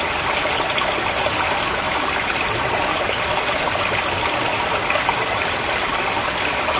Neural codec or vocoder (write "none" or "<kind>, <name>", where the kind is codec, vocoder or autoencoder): none